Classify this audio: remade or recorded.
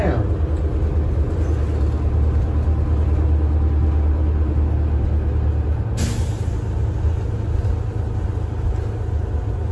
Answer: recorded